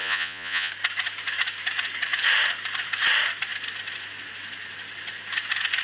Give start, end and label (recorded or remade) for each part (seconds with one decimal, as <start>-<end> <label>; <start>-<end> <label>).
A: 0.0-0.7 remade; 0.7-5.8 recorded